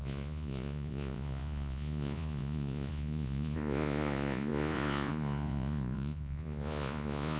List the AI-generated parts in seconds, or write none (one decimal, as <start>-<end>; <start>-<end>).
0.0-7.4